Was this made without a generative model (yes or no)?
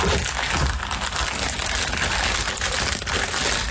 yes